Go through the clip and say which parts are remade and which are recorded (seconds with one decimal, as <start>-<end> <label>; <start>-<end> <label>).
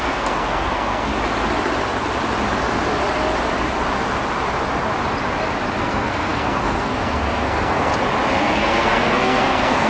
0.0-1.1 remade; 1.1-5.8 recorded; 5.8-7.9 remade; 7.9-8.4 recorded; 8.4-9.9 remade